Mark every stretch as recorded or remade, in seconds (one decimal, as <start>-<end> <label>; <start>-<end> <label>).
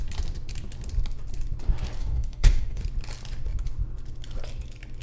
0.0-2.0 recorded; 2.0-2.8 remade; 2.8-5.0 recorded